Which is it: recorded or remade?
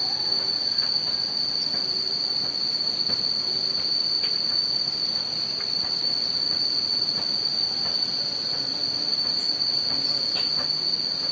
remade